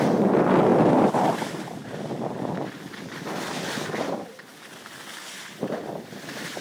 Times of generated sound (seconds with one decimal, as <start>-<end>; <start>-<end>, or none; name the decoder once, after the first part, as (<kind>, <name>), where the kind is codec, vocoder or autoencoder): none

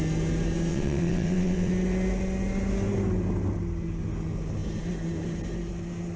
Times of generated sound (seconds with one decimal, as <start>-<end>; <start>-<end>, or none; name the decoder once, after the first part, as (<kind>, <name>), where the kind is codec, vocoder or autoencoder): 0.7-1.7 (vocoder, WaveNeXt)